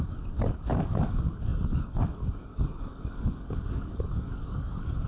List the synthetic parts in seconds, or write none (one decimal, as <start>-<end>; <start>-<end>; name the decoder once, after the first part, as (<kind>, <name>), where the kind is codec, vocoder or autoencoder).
0.0-5.1 (codec, DAC)